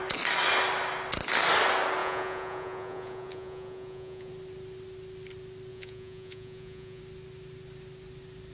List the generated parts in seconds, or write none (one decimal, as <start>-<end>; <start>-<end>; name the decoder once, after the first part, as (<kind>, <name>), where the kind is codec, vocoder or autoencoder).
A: 2.0-4.3 (vocoder, Vocos); 5.7-7.0